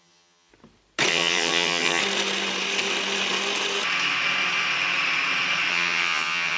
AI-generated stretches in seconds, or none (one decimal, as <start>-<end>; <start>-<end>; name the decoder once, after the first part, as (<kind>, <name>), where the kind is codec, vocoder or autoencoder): 0.0-0.5 (vocoder, HiFi-GAN); 1.1-2.0; 5.7-6.6